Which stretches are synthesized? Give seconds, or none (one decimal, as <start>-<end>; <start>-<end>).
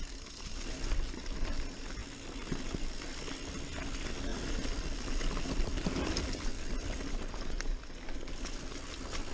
4.3-5.1; 6.5-8.3